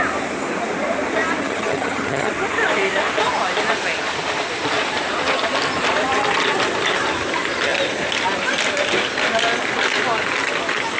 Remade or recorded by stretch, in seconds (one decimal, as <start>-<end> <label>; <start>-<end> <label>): 0.0-1.4 recorded; 1.4-2.3 remade; 2.3-11.0 recorded